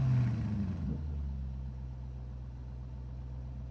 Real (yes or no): yes